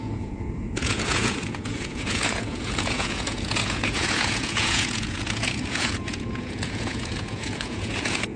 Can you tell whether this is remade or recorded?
remade